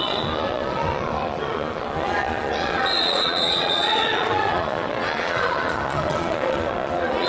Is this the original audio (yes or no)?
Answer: no